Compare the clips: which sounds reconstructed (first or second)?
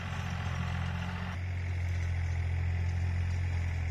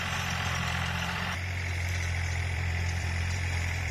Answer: second